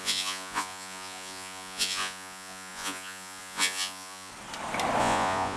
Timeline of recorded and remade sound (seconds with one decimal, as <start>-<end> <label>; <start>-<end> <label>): 0.0-4.3 remade; 4.3-5.0 recorded; 5.0-5.6 remade

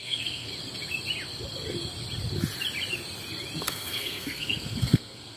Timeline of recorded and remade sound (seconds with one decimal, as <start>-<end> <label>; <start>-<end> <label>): 0.0-0.5 remade; 0.5-3.7 recorded; 3.7-5.4 remade

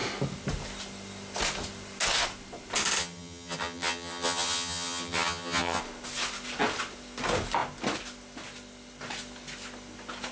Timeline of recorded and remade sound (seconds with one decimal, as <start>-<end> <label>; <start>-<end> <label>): 0.0-3.0 recorded; 3.0-5.8 remade; 5.8-10.3 recorded

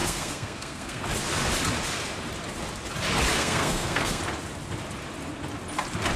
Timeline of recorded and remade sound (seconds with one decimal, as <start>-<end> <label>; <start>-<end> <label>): 0.0-1.0 remade; 1.0-3.3 recorded; 3.3-4.2 remade; 4.2-6.2 recorded

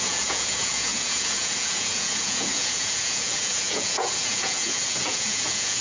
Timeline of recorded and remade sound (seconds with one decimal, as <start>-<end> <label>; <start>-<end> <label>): 0.0-5.8 remade